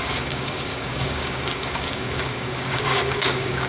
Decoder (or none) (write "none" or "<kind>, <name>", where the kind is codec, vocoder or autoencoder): codec, DAC